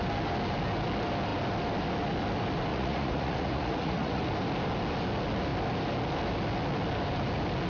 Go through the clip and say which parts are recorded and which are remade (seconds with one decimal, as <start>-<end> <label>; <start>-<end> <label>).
0.0-2.7 recorded; 2.7-4.2 remade; 4.2-7.7 recorded